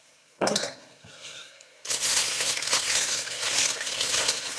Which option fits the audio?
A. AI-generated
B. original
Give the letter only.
A